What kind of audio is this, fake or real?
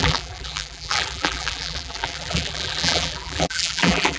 fake